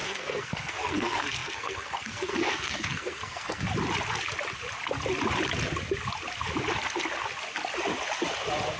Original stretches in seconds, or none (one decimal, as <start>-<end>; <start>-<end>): 3.7-8.8